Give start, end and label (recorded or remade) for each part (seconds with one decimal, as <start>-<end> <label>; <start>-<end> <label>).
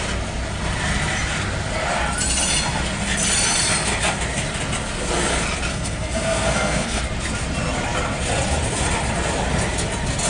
0.0-5.7 recorded; 5.7-7.0 remade; 7.0-10.3 recorded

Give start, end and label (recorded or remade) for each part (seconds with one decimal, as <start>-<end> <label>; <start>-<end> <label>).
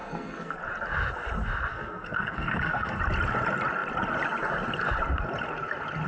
0.0-0.6 remade; 0.6-1.7 recorded; 1.7-3.0 remade; 3.0-6.1 recorded